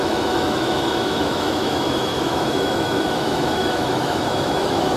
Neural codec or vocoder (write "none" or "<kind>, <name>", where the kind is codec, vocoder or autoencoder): autoencoder, DAC-VAE